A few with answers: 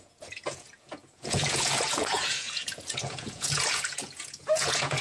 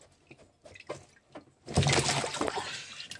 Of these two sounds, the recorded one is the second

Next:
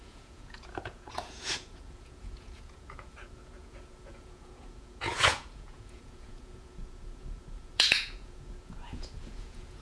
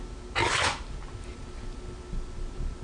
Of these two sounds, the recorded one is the second